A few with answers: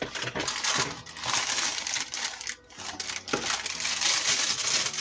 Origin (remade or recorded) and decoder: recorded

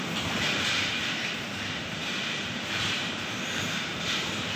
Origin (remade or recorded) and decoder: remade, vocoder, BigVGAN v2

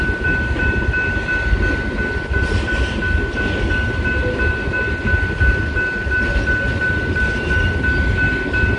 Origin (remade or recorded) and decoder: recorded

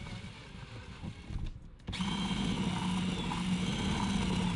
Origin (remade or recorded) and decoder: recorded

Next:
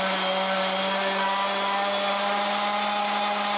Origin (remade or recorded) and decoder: recorded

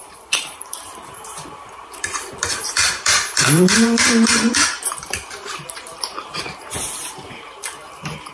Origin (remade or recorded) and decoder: remade, vocoder, BigVGAN v2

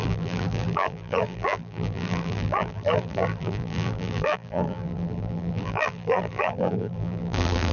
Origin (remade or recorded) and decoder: remade, vocoder, BigVGAN v2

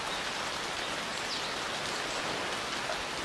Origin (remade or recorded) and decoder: recorded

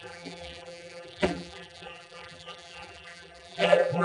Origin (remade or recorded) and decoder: remade, vocoder, BigVGAN v2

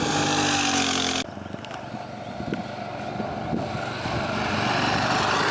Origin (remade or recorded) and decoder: recorded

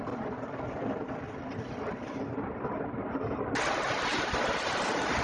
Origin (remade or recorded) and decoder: remade, vocoder, BigVGAN v2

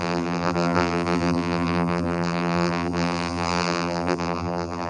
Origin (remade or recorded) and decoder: remade, vocoder, BigVGAN v2